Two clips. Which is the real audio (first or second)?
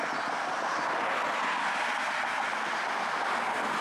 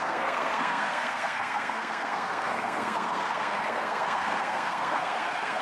first